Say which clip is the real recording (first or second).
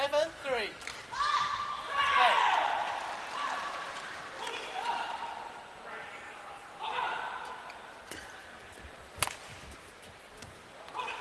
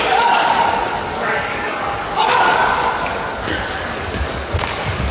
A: first